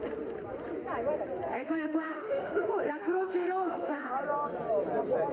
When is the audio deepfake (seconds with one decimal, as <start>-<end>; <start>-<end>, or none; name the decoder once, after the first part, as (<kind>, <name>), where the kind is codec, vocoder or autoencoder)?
1.5-4.1 (autoencoder, DAC-VAE)